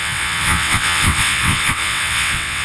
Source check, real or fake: fake